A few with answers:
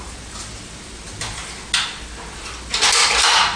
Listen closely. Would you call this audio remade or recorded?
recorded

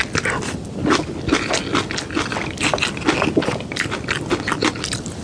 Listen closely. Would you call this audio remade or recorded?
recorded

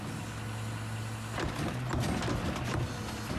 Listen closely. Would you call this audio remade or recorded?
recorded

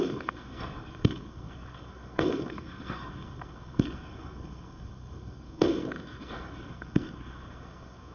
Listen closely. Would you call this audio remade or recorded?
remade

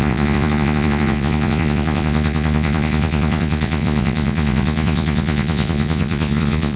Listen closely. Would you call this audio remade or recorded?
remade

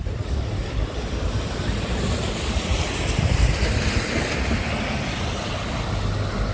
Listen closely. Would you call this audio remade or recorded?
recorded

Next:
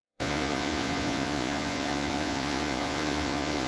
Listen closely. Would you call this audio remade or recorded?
remade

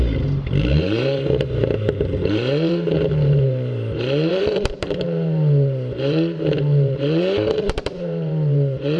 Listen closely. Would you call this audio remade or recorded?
remade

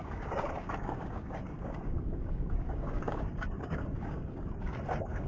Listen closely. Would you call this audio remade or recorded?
remade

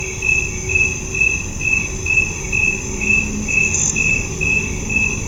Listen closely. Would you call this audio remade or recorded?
recorded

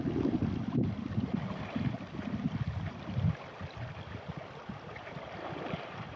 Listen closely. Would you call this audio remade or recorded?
recorded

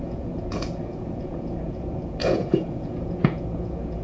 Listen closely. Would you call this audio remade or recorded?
remade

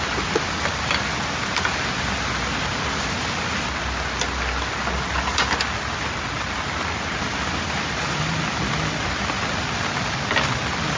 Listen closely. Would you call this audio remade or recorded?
recorded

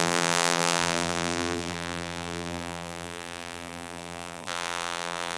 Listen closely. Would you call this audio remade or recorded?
remade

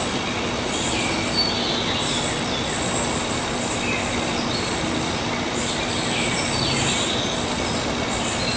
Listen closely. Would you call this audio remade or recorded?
recorded